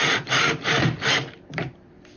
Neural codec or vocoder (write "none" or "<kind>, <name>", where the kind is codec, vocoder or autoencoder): vocoder, BigVGAN v2